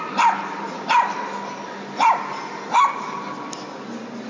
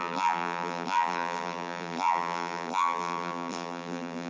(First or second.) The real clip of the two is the first